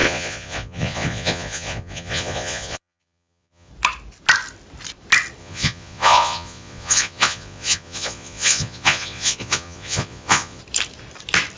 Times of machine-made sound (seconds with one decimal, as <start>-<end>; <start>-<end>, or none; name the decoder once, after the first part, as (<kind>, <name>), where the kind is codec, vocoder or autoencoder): 0.0-3.7 (vocoder, Vocos); 5.4-10.6